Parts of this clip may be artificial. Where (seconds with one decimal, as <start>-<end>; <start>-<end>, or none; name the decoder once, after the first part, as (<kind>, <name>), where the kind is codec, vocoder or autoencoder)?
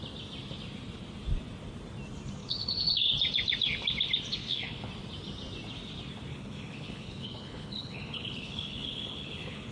2.4-3.1 (codec, HILCodec); 4.4-4.9; 6.3-9.7